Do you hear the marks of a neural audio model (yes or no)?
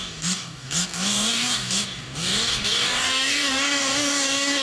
yes